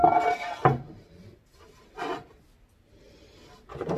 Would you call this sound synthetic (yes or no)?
no